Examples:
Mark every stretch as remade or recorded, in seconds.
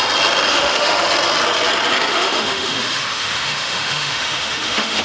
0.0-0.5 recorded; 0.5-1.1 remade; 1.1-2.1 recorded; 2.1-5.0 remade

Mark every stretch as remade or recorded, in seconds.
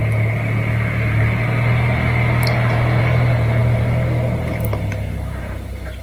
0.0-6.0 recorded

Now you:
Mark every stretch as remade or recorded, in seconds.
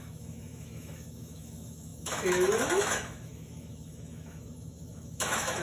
0.0-5.6 remade